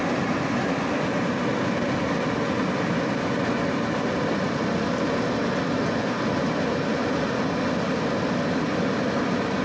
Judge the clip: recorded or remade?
recorded